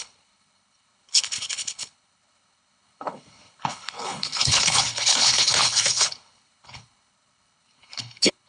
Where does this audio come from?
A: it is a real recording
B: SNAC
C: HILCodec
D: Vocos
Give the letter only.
C